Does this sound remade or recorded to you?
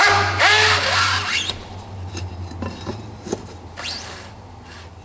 recorded